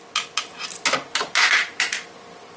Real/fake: real